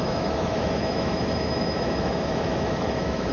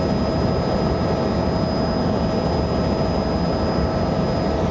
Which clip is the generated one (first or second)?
first